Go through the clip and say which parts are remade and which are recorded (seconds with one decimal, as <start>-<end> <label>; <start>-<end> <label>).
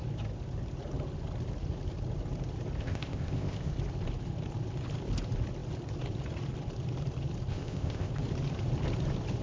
0.0-2.8 recorded; 2.8-3.7 remade; 3.7-7.5 recorded; 7.5-8.1 remade; 8.1-9.4 recorded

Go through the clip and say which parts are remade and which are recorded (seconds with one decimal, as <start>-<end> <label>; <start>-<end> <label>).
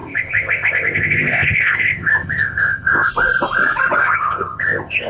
0.0-3.1 remade; 3.1-4.0 recorded; 4.0-5.1 remade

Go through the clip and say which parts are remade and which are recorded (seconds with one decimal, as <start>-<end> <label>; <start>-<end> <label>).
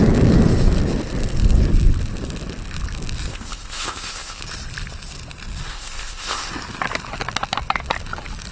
0.0-3.3 recorded; 3.3-4.4 remade; 4.4-5.7 recorded; 5.7-6.5 remade; 6.5-8.5 recorded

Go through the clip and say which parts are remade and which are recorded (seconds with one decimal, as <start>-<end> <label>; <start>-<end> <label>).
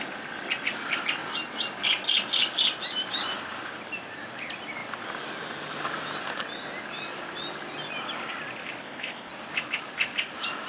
0.0-8.8 recorded; 8.8-9.3 remade; 9.3-10.7 recorded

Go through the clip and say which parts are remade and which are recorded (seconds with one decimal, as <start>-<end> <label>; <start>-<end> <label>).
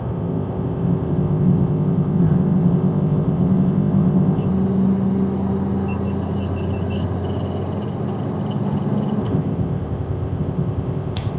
0.0-4.5 remade; 4.5-9.2 recorded; 9.2-11.4 remade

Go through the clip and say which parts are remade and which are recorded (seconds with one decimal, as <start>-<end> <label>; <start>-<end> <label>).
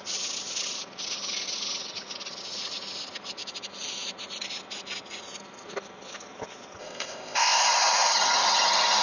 0.0-6.8 recorded; 6.8-7.6 remade; 7.6-9.0 recorded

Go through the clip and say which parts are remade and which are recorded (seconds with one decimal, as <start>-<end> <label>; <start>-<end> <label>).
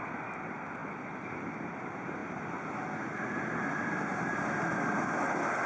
0.0-5.7 recorded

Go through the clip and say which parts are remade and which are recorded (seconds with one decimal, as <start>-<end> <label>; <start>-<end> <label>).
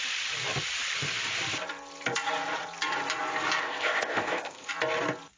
0.0-3.6 recorded; 3.6-4.7 remade; 4.7-5.4 recorded